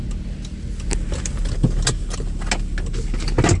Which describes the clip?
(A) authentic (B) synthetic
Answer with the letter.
A